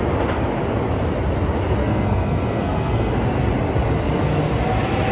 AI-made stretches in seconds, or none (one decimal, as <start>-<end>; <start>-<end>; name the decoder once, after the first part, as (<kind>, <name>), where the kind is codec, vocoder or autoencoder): 1.8-3.1 (codec, SNAC)